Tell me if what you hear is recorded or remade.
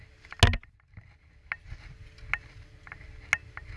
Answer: recorded